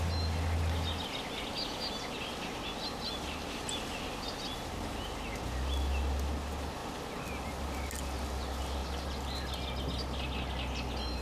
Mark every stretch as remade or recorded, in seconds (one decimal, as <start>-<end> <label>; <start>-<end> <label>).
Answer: 0.0-11.2 recorded